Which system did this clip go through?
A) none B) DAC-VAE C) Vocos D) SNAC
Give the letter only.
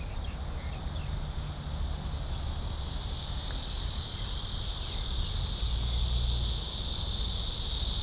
A